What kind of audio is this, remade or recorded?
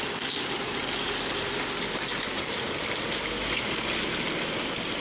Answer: recorded